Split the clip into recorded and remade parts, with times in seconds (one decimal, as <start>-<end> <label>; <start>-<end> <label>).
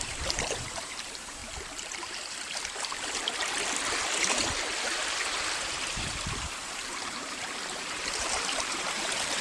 0.0-1.4 remade; 1.4-5.5 recorded; 5.5-9.4 remade